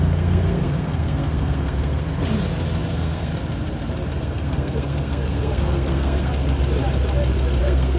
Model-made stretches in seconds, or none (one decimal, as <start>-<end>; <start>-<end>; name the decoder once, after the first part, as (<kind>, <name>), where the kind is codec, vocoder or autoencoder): 0.0-2.2 (codec, SNAC); 2.9-3.3; 4.2-6.3; 7.6-8.0